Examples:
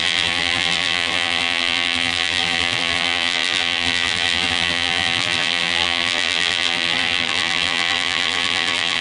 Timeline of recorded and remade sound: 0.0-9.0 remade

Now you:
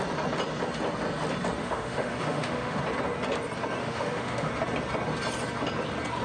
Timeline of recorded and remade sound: 0.0-1.6 recorded; 1.6-2.8 remade; 2.8-3.8 recorded; 3.8-4.5 remade; 4.5-6.2 recorded